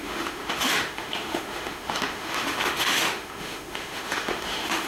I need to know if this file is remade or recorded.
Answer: remade